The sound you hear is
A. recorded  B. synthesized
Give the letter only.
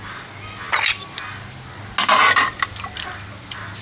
A